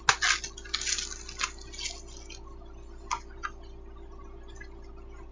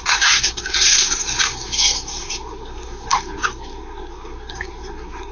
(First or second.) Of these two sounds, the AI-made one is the second